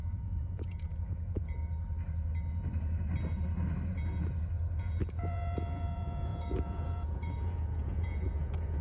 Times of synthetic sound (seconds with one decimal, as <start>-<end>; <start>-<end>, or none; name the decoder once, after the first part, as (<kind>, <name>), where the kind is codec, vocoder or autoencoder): 0.0-1.6 (vocoder, Vocos); 4.8-8.8